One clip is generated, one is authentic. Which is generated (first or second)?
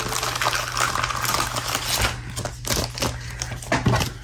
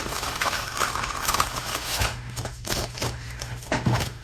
second